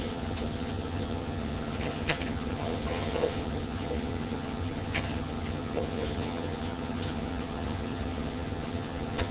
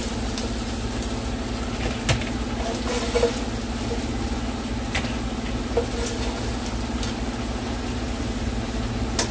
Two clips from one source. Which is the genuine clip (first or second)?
second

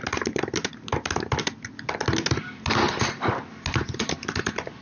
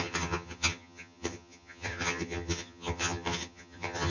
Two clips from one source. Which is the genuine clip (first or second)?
first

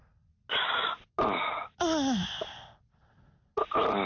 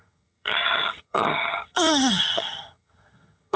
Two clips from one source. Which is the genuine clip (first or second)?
first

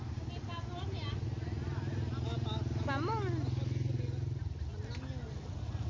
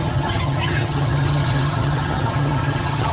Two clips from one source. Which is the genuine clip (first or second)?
first